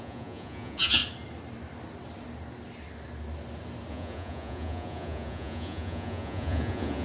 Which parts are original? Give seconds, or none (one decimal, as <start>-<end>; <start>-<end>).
1.0-3.9